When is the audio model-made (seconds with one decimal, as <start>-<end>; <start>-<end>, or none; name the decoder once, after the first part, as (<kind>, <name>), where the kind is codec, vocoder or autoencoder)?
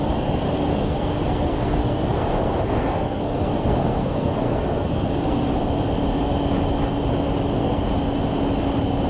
0.0-5.5 (codec, SNAC); 7.5-7.9